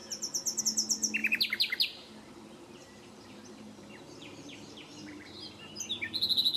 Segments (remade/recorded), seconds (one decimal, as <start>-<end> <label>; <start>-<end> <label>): 0.0-1.2 recorded; 1.2-2.1 remade; 2.1-2.8 recorded; 2.8-5.7 remade; 5.7-6.6 recorded